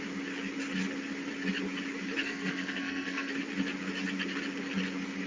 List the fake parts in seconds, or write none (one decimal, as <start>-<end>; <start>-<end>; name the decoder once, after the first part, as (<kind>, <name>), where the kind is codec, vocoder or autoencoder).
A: 2.2-3.3 (codec, SNAC)